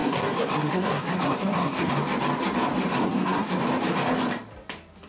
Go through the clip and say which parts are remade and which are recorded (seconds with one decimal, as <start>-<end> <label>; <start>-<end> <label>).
0.0-1.9 remade; 1.9-3.0 recorded; 3.0-3.5 remade; 3.5-5.1 recorded